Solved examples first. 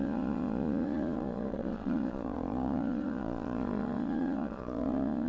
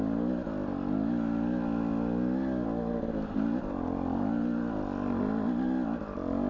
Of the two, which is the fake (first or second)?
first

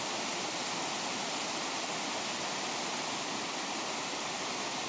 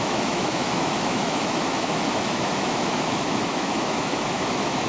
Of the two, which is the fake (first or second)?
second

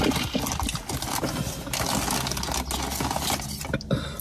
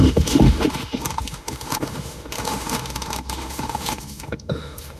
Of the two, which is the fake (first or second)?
second